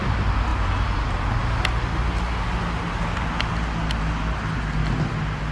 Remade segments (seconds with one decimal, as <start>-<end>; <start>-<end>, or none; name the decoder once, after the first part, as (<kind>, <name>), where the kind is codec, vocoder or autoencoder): none